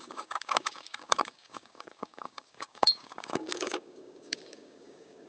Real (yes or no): no